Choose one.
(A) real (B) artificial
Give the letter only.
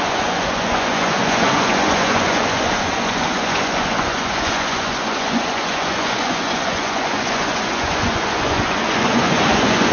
B